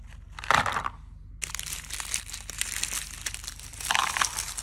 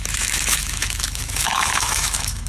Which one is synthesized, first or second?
second